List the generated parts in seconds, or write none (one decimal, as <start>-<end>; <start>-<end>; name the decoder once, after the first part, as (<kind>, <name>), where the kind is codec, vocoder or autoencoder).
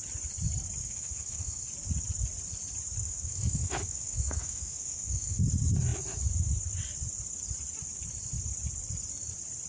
0.8-1.7 (autoencoder, DAC-VAE); 3.1-5.4